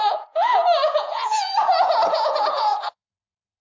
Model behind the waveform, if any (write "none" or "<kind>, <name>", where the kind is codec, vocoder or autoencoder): vocoder, Vocos